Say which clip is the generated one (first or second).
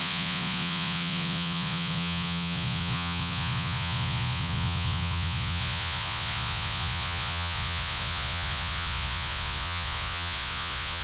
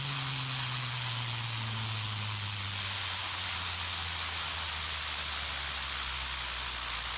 first